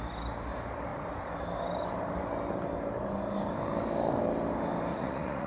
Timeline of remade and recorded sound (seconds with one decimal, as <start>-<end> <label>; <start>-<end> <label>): 0.0-4.9 recorded; 4.9-5.5 remade